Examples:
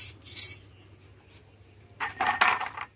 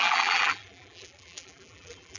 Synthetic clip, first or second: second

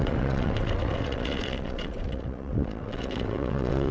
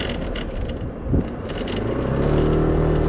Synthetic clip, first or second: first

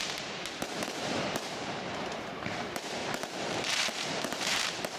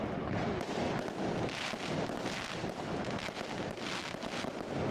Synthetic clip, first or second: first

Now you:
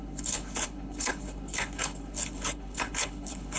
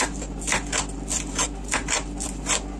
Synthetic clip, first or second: first